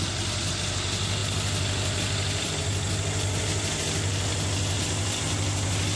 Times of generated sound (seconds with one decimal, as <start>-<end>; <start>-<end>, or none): none

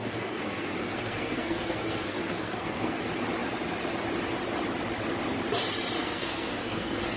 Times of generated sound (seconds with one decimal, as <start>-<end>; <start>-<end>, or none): 0.0-3.0; 6.0-7.2